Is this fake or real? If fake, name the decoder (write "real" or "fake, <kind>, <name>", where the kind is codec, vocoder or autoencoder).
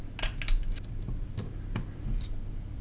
real